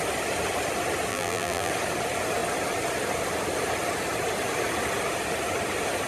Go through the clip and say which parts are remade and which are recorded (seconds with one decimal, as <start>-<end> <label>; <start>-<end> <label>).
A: 0.0-1.1 recorded; 1.1-1.7 remade; 1.7-6.1 recorded